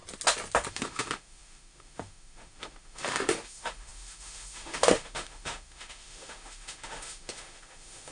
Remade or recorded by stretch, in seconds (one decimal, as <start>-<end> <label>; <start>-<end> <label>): 0.0-0.7 recorded; 0.7-8.1 remade

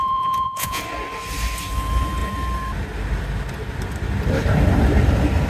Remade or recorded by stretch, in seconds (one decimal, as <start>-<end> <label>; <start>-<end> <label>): 0.0-0.8 remade; 0.8-5.5 recorded

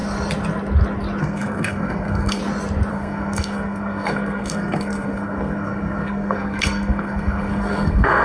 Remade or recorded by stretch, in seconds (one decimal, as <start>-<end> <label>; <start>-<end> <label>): 0.0-1.2 recorded; 1.2-2.4 remade; 2.4-2.9 recorded; 2.9-8.2 remade

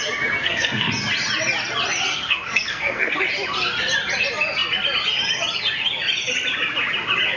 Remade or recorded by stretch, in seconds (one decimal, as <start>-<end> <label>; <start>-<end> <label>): 0.0-0.4 recorded; 0.4-0.9 remade; 0.9-2.1 recorded; 2.1-3.2 remade; 3.2-7.4 recorded

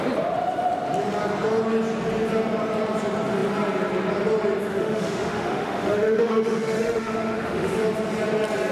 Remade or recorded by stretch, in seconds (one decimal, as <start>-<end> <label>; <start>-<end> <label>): 0.0-4.7 recorded; 4.7-7.8 remade; 7.8-8.7 recorded

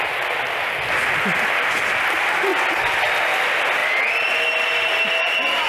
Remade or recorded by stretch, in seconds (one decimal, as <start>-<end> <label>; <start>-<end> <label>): 0.0-5.7 recorded

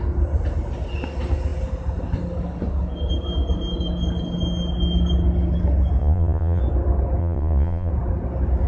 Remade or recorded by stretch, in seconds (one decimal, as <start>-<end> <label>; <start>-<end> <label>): 0.0-6.0 recorded; 6.0-6.6 remade; 6.6-7.2 recorded; 7.2-7.9 remade; 7.9-8.7 recorded

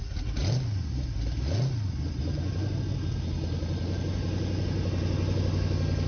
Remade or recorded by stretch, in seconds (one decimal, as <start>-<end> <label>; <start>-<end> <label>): 0.0-6.1 recorded